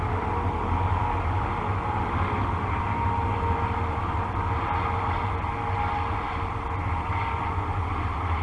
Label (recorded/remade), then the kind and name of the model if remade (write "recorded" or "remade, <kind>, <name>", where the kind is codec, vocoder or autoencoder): recorded